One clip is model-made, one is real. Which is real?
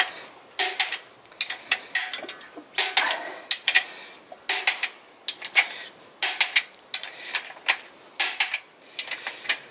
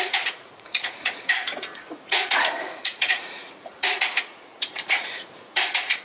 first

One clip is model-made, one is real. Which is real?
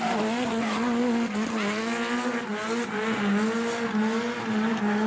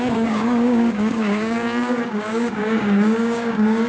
first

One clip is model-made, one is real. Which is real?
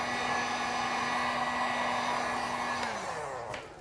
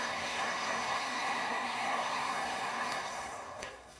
first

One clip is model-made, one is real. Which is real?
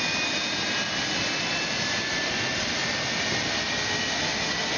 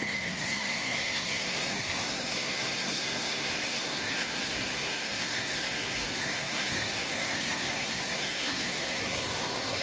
first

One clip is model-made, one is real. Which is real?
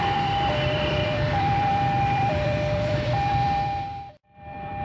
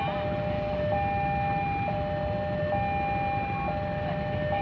second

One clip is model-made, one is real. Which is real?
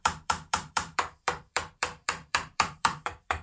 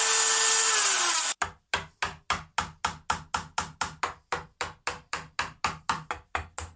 second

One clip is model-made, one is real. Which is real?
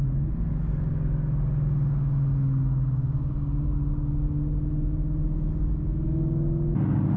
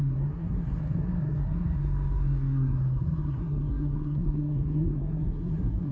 first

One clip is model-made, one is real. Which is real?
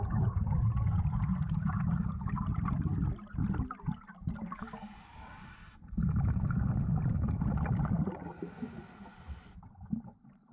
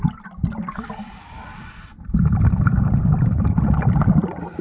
first